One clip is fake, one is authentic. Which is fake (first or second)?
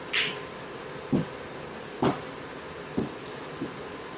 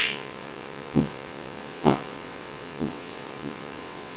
second